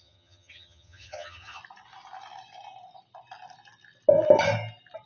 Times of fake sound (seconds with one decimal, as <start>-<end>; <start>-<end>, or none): 0.0-1.6